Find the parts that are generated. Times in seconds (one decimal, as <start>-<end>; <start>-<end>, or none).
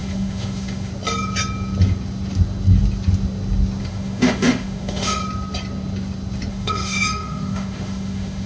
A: 0.0-0.9; 3.8-5.2; 6.5-8.5